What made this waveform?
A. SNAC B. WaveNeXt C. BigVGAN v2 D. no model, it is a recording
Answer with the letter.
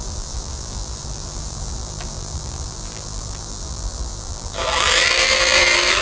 C